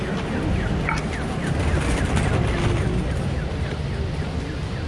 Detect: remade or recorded recorded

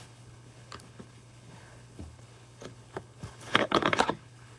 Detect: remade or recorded remade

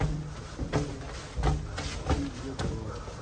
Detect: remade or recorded recorded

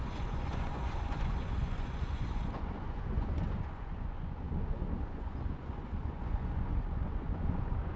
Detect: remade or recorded remade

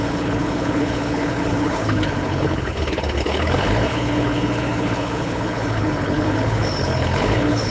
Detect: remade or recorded remade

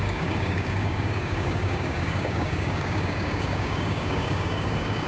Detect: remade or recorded remade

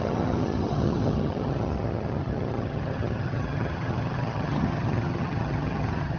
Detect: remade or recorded remade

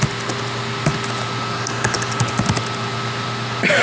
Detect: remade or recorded recorded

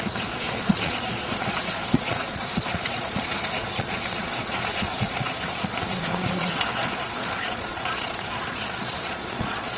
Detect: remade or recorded remade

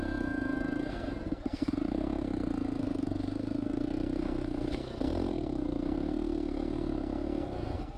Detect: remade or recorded remade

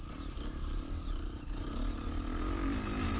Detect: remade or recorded recorded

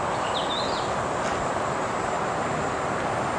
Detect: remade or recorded recorded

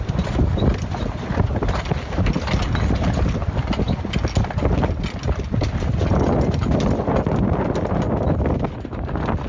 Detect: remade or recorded recorded